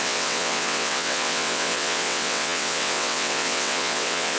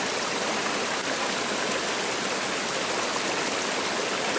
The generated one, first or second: first